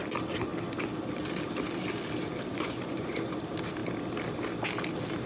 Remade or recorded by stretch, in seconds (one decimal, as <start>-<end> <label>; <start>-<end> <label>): 0.0-2.5 recorded; 2.5-3.3 remade; 3.3-5.3 recorded